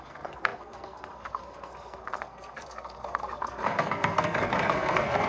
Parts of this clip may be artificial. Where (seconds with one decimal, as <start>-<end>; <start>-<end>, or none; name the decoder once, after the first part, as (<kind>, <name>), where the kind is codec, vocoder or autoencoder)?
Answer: 0.0-5.3 (codec, SNAC)